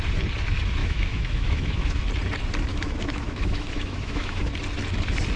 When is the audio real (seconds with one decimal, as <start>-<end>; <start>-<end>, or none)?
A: 0.0-0.8; 2.0-2.7; 4.5-5.4